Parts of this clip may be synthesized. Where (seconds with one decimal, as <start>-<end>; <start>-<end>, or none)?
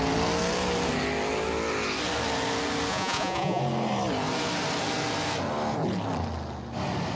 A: 2.9-3.6